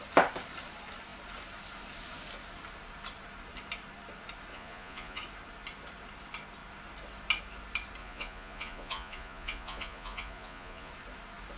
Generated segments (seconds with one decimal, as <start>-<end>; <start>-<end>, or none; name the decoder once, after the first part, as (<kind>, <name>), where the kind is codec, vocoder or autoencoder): 4.5-5.2 (vocoder, Vocos); 8.0-10.9